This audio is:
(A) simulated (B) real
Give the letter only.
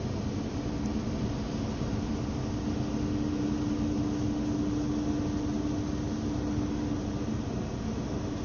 B